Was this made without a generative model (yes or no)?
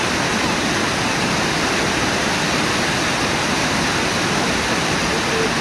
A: yes